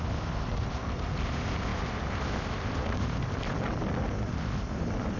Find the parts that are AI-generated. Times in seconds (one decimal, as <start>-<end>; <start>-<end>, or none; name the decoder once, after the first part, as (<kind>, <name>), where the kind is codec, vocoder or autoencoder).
none